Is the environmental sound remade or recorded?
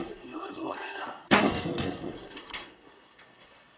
remade